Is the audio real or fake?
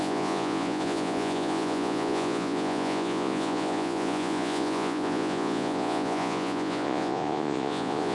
fake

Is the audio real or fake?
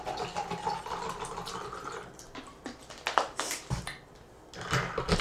real